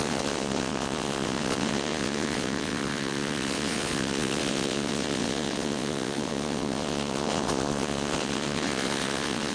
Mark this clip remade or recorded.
remade